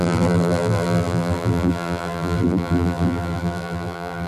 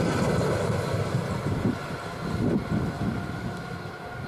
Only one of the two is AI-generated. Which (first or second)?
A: first